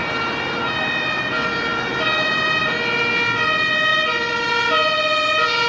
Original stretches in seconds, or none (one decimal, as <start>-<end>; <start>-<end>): 0.6-3.9; 4.5-5.7